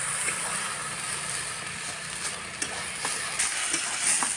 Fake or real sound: real